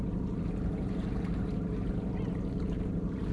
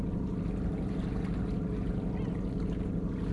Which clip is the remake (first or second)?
first